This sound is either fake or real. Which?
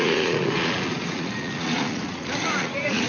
fake